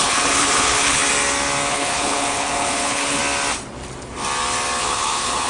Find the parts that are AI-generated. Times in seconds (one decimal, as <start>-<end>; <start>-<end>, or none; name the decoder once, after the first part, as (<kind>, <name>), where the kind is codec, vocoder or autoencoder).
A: 0.0-1.0 (codec, HILCodec); 1.7-3.2; 4.8-5.5